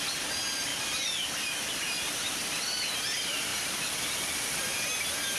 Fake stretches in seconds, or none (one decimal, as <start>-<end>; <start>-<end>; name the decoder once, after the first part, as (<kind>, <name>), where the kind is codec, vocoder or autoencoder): 0.7-1.3 (vocoder, BigVGAN v2)